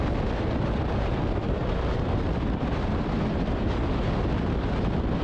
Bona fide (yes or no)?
yes